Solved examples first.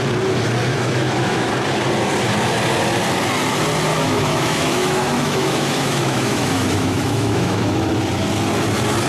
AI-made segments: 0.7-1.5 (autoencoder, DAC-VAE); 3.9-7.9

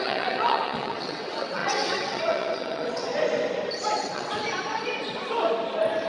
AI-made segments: 0.0-3.1 (vocoder, WaveNeXt); 4.0-4.4

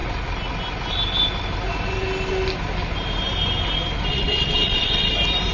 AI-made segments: 4.1-5.1 (vocoder, WaveNeXt)

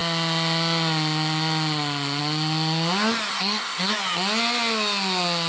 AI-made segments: 3.3-3.9 (codec, SNAC)

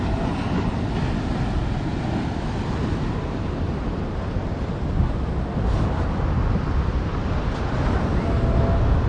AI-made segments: 1.6-5.6 (vocoder, BigVGAN v2); 7.2-8.3

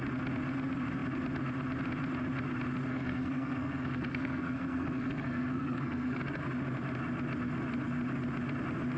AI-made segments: 2.9-6.2 (codec, SNAC)